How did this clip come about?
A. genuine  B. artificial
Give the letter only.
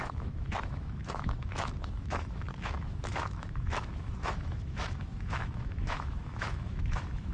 B